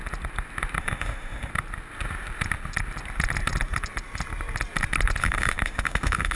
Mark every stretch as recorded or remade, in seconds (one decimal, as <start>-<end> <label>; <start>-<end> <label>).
0.0-0.8 recorded; 0.8-1.5 remade; 1.5-5.2 recorded; 5.2-6.3 remade